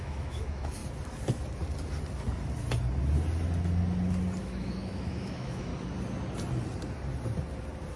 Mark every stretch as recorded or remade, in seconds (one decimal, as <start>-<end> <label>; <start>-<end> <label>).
0.0-0.8 remade; 0.8-4.4 recorded; 4.4-5.7 remade; 5.7-8.0 recorded